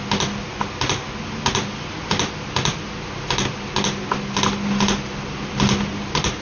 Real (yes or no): yes